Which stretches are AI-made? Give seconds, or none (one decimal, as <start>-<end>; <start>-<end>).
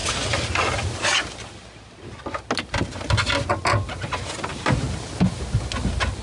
4.5-5.0